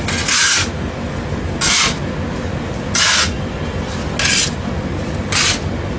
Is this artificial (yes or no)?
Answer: no